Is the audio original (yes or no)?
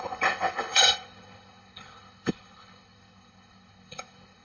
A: no